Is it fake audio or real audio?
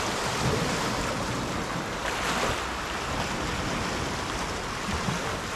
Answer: real